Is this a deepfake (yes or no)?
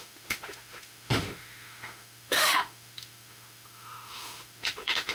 yes